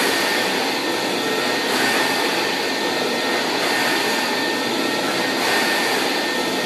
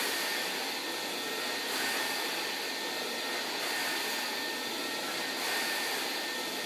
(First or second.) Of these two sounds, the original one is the first